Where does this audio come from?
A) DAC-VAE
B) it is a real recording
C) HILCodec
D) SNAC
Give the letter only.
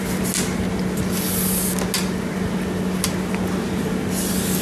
B